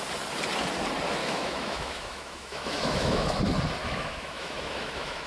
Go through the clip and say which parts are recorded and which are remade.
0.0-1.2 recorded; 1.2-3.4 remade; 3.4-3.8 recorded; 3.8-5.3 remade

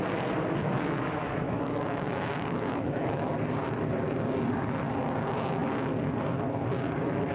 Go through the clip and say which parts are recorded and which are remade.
0.0-0.6 recorded; 0.6-3.3 remade; 3.3-7.3 recorded

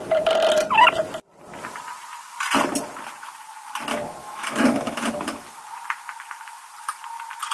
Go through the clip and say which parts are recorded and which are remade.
0.0-4.2 recorded; 4.2-5.6 remade; 5.6-7.5 recorded

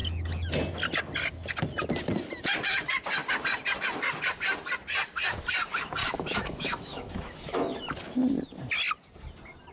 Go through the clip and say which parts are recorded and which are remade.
0.0-6.0 recorded; 6.0-7.8 remade; 7.8-9.7 recorded

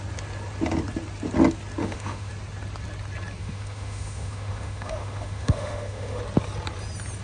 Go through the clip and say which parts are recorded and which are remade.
0.0-1.8 recorded; 1.8-2.3 remade; 2.3-3.4 recorded; 3.4-6.2 remade; 6.2-7.2 recorded

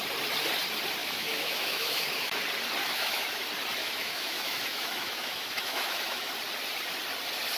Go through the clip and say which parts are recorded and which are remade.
0.0-1.0 recorded; 1.0-2.4 remade; 2.4-2.8 recorded; 2.8-3.4 remade; 3.4-3.8 recorded; 3.8-6.3 remade; 6.3-7.6 recorded